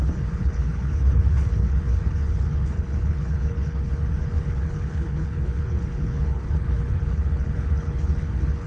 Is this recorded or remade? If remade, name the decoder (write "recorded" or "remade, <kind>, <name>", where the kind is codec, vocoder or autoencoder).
remade, codec, HILCodec